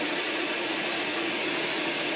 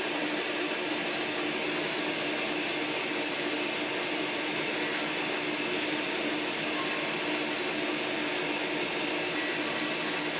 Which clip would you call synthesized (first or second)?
first